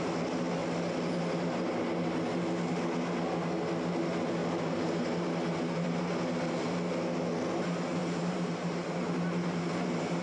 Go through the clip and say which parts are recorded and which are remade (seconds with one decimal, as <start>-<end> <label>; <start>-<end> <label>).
0.0-4.4 recorded; 4.4-5.0 remade; 5.0-8.0 recorded; 8.0-8.9 remade; 8.9-10.2 recorded